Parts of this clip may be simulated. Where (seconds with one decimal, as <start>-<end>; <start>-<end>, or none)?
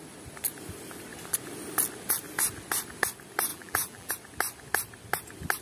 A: 3.5-4.1